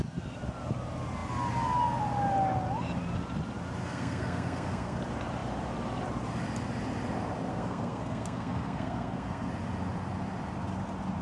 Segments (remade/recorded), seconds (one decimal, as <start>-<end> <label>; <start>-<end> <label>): 0.0-3.8 recorded; 3.8-5.0 remade; 5.0-7.5 recorded; 7.5-9.5 remade; 9.5-11.2 recorded